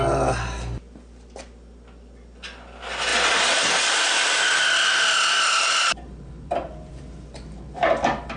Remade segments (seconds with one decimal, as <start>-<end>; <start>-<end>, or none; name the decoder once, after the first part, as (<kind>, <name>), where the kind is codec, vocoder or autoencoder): 5.9-7.0 (vocoder, BigVGAN v2)